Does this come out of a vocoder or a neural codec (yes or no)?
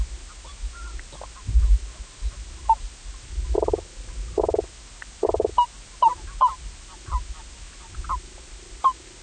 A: no